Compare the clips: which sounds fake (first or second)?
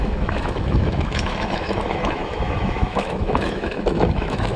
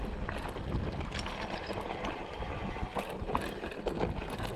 first